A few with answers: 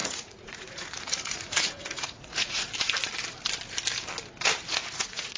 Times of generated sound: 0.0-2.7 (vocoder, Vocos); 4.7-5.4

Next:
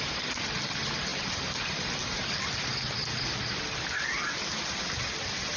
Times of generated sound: none

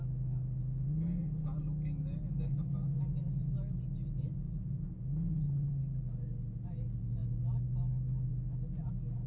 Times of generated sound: 7.2-8.3 (autoencoder, DAC-VAE)

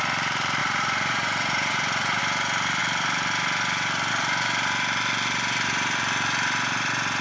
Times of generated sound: 0.6-2.2 (vocoder, Vocos)

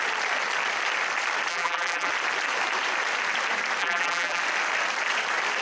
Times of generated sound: 1.5-2.1 (vocoder, BigVGAN v2); 3.8-4.4

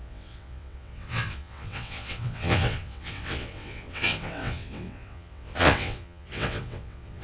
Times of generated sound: 0.0-7.2 (vocoder, WaveNeXt)

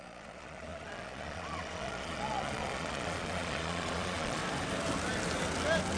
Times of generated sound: 0.0-4.4 (vocoder, Vocos)